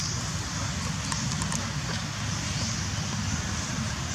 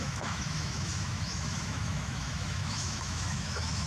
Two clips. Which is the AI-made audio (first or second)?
second